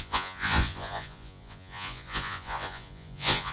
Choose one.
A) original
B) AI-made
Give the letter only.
B